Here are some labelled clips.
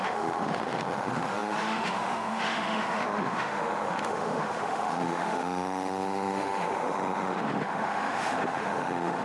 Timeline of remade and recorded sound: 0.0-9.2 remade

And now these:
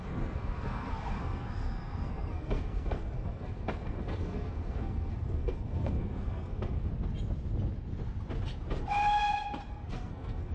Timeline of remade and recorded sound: 0.0-6.9 remade; 6.9-9.7 recorded; 9.7-10.5 remade

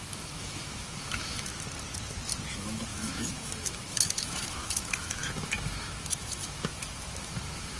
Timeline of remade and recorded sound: 0.0-1.5 remade; 1.5-2.5 recorded; 2.5-7.8 remade

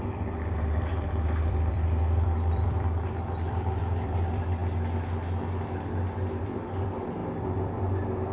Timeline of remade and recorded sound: 0.0-4.6 remade; 4.6-6.4 recorded; 6.4-8.3 remade